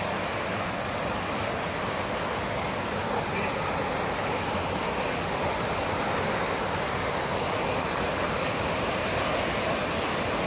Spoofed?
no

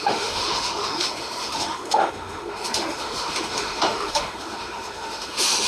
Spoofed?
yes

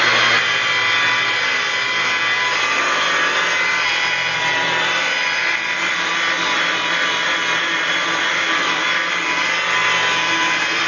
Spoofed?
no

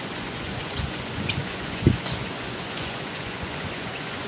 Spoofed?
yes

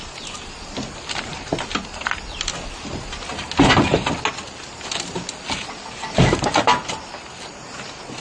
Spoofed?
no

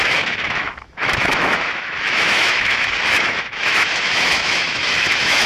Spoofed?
yes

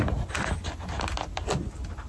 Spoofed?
no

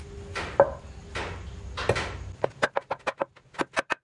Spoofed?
no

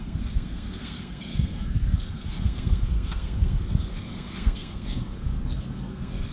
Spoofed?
yes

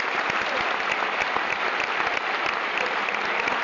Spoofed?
no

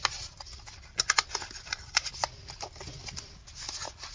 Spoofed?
no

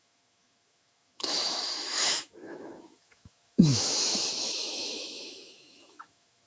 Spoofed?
yes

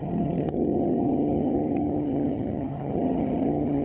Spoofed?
yes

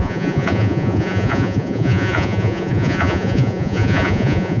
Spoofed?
yes